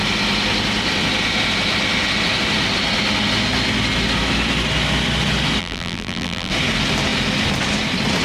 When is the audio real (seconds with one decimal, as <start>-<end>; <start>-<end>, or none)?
0.0-5.6; 6.5-8.2